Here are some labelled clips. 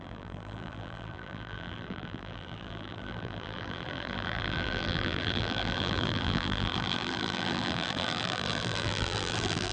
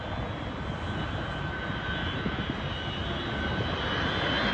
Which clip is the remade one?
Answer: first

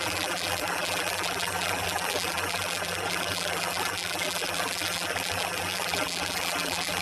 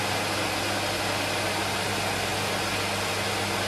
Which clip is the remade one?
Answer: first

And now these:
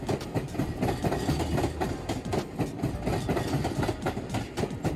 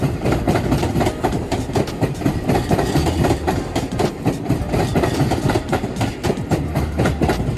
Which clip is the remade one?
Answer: second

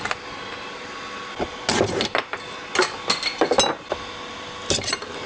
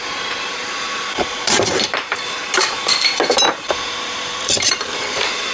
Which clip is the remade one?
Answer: second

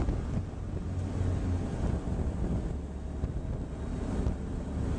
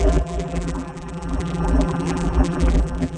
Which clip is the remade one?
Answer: second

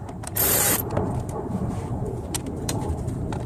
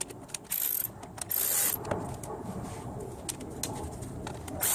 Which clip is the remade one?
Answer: first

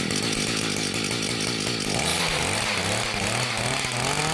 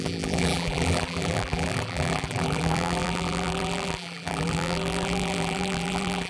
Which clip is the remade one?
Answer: second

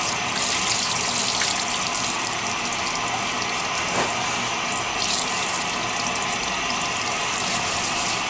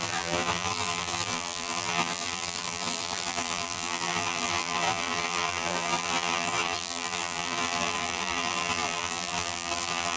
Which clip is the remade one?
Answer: second